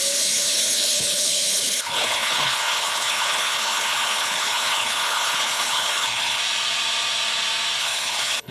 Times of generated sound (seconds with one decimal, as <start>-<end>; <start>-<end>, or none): 0.0-6.4; 7.8-8.5